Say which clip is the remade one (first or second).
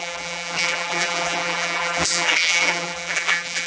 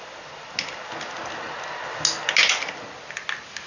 first